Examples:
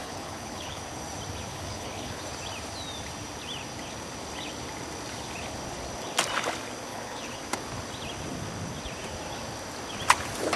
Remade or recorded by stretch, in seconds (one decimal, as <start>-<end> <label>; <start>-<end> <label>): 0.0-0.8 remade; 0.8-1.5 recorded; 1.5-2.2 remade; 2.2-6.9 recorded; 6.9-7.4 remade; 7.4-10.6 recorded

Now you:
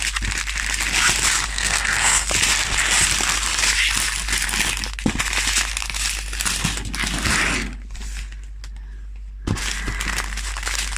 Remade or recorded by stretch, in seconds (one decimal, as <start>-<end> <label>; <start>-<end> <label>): 0.0-1.5 recorded; 1.5-2.3 remade; 2.3-11.0 recorded

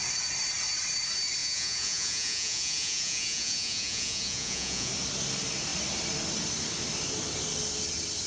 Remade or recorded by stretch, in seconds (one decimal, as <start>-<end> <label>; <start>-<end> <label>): 0.0-1.4 recorded; 1.4-4.9 remade; 4.9-8.3 recorded

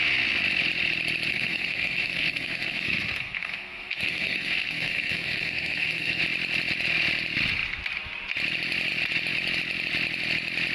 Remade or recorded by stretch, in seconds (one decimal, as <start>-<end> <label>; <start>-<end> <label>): 0.0-1.3 recorded; 1.3-6.2 remade; 6.2-10.7 recorded